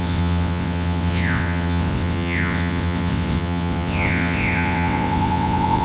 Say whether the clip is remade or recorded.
remade